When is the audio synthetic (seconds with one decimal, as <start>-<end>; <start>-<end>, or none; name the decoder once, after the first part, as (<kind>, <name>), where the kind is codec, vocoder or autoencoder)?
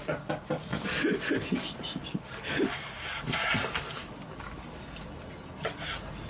none